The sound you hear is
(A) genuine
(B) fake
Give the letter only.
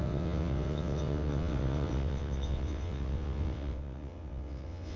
B